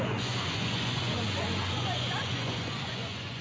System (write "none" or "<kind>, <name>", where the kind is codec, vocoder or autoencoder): vocoder, Vocos